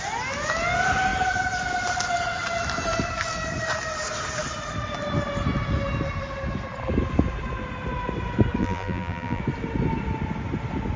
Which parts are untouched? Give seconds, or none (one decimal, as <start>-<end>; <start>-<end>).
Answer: 0.0-8.6; 9.4-11.0